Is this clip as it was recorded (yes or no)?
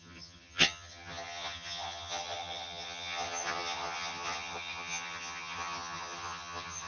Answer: no